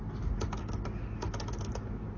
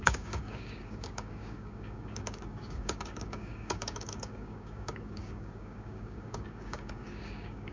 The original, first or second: first